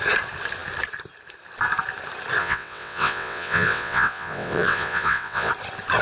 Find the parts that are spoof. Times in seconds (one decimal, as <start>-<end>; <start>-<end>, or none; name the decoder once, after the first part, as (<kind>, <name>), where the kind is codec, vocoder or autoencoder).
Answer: 2.4-5.5 (vocoder, WaveNeXt)